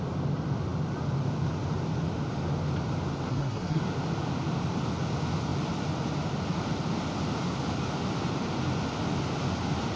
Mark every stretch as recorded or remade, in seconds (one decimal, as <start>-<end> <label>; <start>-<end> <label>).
0.0-3.3 recorded; 3.3-3.8 remade; 3.8-10.0 recorded